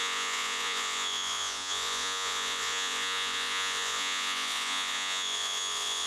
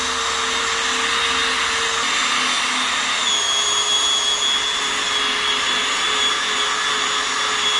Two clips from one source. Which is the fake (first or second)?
first